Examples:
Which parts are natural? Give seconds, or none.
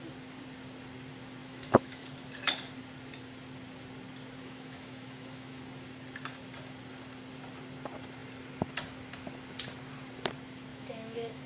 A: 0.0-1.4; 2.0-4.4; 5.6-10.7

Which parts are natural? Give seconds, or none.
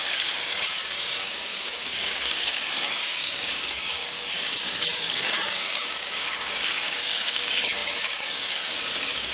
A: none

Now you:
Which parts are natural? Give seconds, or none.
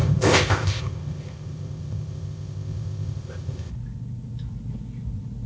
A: 3.7-5.5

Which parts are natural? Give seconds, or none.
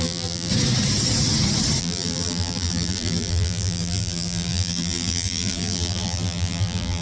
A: 0.5-1.8